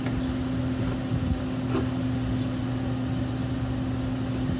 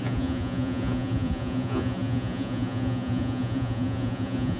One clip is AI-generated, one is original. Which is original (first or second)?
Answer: first